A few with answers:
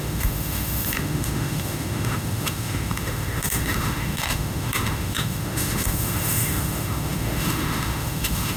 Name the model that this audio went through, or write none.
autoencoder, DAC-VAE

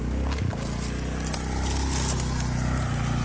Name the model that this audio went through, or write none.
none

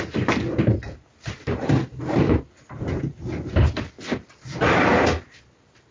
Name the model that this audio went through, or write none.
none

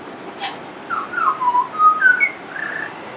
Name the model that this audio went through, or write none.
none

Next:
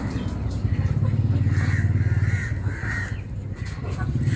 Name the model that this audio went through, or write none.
none